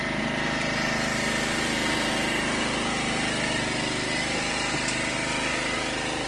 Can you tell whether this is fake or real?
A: real